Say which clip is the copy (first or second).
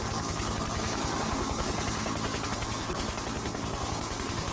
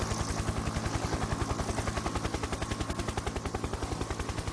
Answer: first